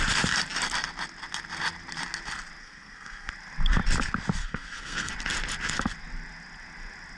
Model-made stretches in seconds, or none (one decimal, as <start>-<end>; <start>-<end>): 2.6-3.3; 4.4-5.1